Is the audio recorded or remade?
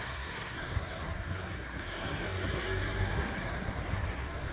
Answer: remade